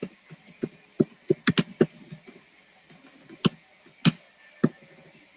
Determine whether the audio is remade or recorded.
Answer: recorded